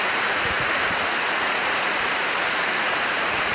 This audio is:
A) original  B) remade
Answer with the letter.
B